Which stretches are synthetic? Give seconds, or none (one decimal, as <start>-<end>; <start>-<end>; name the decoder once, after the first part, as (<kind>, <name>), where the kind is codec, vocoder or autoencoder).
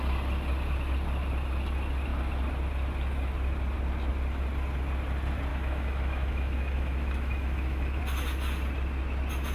5.5-8.0 (autoencoder, DAC-VAE)